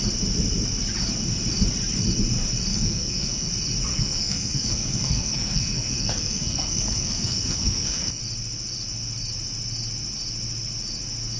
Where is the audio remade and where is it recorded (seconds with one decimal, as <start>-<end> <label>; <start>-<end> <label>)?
0.0-2.7 recorded; 2.7-3.5 remade; 3.5-3.9 recorded; 3.9-8.2 remade; 8.2-11.4 recorded